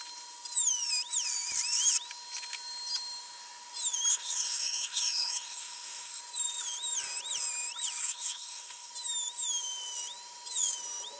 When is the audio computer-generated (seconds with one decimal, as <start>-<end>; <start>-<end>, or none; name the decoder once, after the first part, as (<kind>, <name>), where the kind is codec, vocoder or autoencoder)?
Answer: 4.1-6.2 (codec, SNAC); 8.0-8.9